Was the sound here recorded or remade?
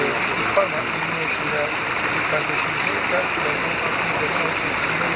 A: recorded